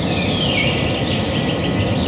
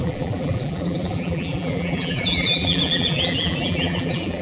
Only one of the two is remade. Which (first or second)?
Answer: second